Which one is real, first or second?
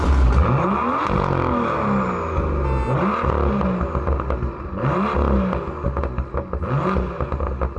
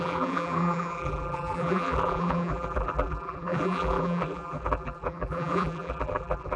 first